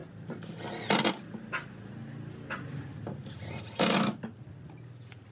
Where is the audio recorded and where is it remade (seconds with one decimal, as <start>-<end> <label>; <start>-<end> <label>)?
0.0-5.3 recorded